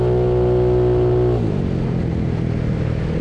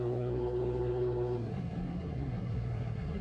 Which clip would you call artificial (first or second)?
second